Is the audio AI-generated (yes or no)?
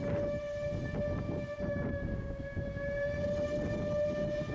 no